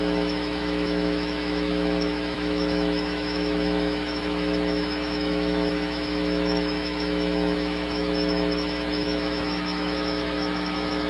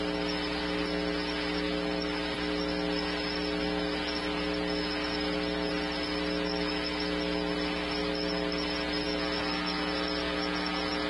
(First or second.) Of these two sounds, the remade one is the first